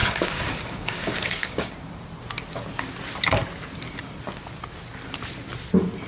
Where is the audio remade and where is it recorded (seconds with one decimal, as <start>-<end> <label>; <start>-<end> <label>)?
0.0-1.7 remade; 1.7-6.1 recorded